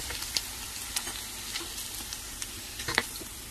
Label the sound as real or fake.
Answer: real